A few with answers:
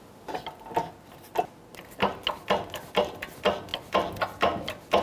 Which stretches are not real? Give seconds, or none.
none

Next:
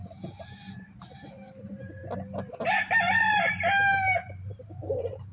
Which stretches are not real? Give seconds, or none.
1.3-2.0 (vocoder, BigVGAN v2); 2.9-5.3

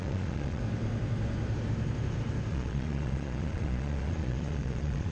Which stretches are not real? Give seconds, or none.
0.0-0.6 (vocoder, Vocos); 2.5-5.1

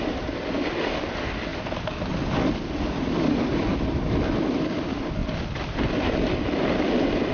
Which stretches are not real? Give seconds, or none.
none

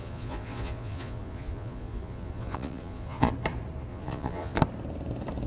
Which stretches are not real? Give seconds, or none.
0.0-3.3 (vocoder, Vocos); 3.9-4.6

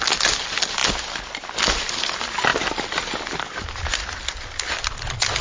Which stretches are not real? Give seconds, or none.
none

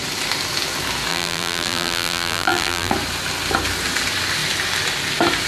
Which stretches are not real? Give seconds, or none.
1.1-2.9 (vocoder, BigVGAN v2)